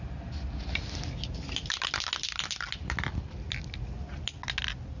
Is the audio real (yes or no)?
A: yes